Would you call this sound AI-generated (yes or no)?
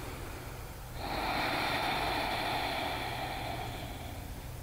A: no